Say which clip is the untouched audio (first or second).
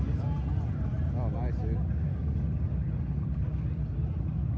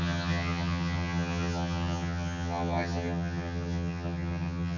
first